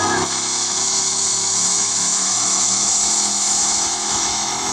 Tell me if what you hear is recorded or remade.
remade